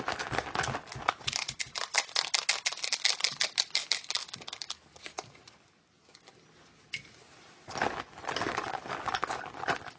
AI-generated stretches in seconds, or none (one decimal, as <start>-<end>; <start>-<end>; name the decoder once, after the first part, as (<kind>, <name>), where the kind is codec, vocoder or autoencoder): none